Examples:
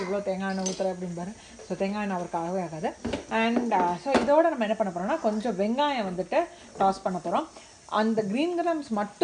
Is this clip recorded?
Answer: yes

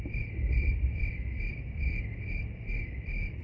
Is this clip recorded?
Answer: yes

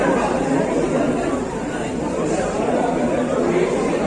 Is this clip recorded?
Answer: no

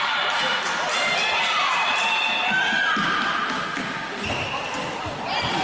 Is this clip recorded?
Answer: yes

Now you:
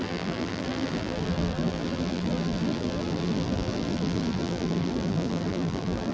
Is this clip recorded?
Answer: no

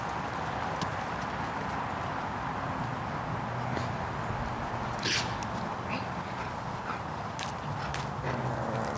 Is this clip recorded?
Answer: yes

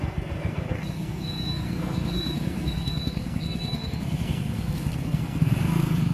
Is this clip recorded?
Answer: no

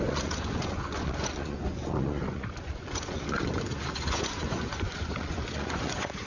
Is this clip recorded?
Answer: no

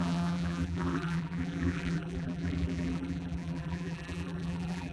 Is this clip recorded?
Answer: no